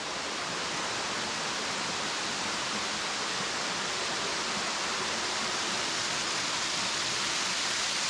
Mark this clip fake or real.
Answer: real